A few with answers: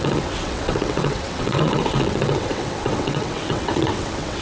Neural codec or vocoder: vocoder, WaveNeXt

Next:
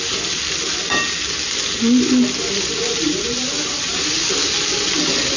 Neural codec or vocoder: none